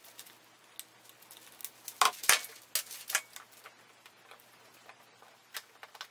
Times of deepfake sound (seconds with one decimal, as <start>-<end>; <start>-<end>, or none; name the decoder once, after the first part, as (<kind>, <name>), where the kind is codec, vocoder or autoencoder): none